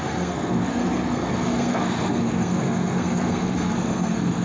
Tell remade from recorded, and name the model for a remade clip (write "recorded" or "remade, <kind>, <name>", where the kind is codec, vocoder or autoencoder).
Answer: remade, codec, SNAC